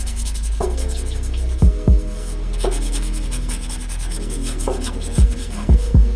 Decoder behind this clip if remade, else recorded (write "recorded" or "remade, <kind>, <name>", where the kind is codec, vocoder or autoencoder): remade, codec, SNAC